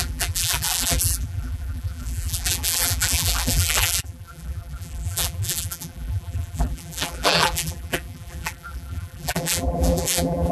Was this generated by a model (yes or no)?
yes